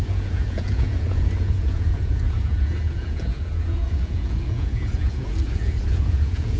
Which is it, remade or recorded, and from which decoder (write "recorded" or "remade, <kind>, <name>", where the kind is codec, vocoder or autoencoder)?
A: remade, vocoder, Vocos